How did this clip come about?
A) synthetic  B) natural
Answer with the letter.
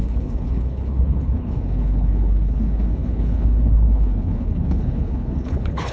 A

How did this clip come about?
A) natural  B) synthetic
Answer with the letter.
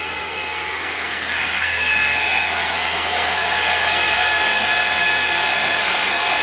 B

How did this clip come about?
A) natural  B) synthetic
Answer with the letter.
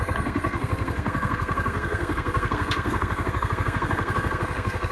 B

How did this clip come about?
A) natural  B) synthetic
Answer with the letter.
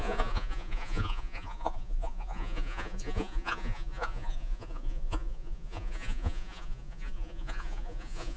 B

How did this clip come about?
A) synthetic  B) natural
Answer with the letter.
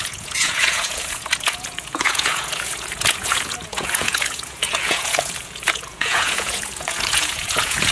A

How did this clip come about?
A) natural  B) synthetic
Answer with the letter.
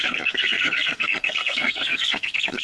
B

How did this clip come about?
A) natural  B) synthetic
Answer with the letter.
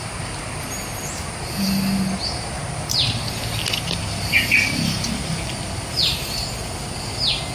A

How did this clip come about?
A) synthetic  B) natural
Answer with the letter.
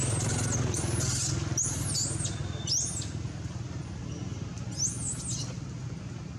B